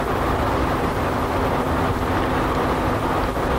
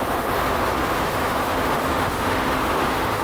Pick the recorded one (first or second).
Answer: first